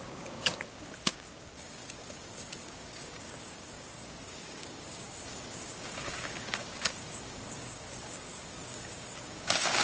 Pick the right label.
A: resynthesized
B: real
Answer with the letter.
A